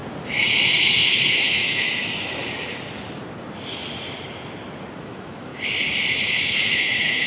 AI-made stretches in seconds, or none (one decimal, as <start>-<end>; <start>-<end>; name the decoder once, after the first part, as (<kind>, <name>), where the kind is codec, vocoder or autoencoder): 0.8-2.4 (autoencoder, DAC-VAE); 5.0-5.5; 6.4-7.3